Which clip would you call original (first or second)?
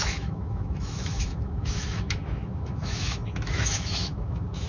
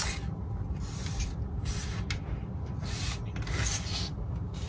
second